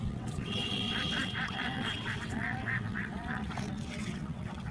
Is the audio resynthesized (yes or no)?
yes